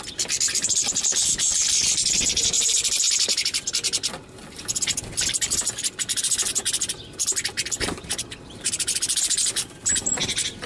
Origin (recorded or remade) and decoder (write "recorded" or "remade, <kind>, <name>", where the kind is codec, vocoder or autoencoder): recorded